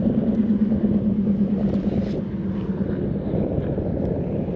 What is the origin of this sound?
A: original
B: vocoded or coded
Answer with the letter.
A